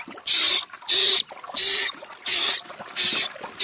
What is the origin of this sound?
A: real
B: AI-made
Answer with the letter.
A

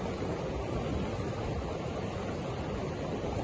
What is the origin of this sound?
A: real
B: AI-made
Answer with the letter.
A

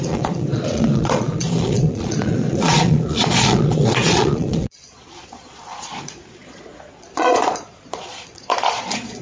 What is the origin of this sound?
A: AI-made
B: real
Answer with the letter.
A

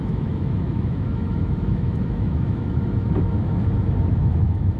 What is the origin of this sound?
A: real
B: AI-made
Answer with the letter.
B